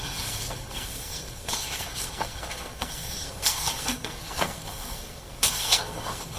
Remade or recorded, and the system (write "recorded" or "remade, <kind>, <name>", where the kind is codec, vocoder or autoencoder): remade, codec, SNAC